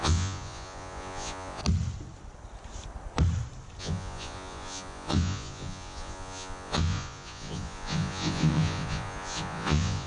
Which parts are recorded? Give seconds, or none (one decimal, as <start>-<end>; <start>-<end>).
1.6-3.8